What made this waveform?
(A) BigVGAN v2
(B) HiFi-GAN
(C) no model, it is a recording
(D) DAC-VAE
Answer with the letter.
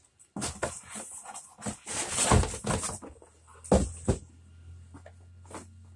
C